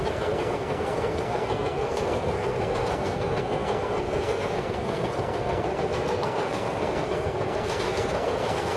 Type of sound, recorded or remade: remade